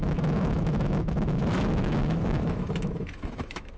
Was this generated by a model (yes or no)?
yes